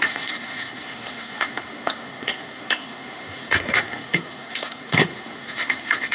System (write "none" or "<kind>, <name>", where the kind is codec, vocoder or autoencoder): codec, SNAC